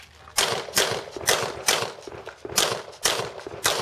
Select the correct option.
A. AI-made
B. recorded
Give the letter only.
B